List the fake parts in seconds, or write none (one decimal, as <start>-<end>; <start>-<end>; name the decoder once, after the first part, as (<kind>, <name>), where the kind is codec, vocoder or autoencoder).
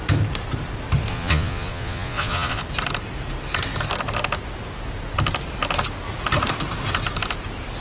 1.1-2.6 (vocoder, Vocos)